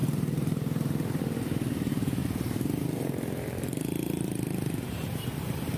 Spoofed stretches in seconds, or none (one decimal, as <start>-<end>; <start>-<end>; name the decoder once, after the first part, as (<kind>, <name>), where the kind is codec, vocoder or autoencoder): 0.0-1.2 (vocoder, BigVGAN v2); 2.2-5.3